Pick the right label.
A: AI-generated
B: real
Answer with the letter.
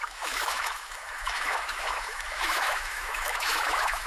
A